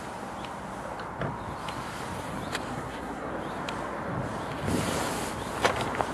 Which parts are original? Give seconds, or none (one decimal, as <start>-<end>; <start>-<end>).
0.0-2.7; 3.3-6.1